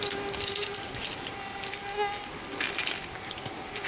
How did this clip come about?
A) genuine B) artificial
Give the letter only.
A